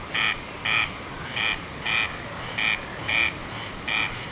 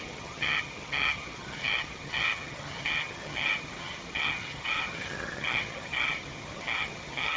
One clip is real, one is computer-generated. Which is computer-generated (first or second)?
second